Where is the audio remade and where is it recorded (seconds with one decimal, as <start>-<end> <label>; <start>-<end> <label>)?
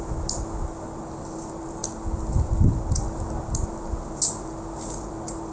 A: 0.0-5.5 recorded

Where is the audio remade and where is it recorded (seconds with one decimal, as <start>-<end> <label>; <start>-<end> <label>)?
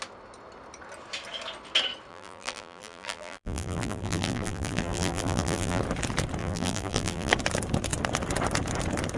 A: 0.0-2.1 recorded; 2.1-5.8 remade; 5.8-6.4 recorded; 6.4-7.3 remade; 7.3-9.2 recorded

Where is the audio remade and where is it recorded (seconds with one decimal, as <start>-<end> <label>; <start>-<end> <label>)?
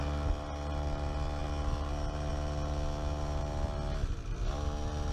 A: 0.0-5.1 recorded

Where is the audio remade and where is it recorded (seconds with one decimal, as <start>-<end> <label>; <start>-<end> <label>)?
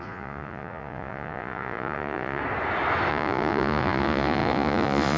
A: 0.0-2.4 remade; 2.4-3.1 recorded; 3.1-5.2 remade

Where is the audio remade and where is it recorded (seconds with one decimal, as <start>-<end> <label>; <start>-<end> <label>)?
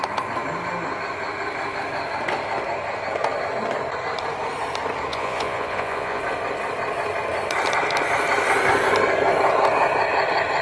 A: 0.0-5.1 recorded; 5.1-6.2 remade; 6.2-10.6 recorded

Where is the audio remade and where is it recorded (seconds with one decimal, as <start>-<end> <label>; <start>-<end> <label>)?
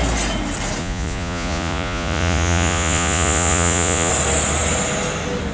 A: 0.0-0.8 recorded; 0.8-4.1 remade; 4.1-5.5 recorded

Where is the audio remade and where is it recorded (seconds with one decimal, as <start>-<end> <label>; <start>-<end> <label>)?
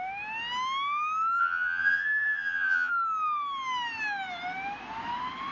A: 0.0-1.4 recorded; 1.4-2.9 remade; 2.9-5.5 recorded